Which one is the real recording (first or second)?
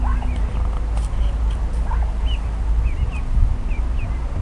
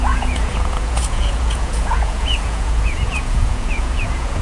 first